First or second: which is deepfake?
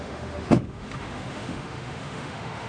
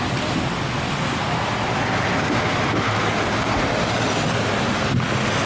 first